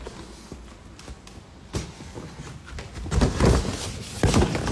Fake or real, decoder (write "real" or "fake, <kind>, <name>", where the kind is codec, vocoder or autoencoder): real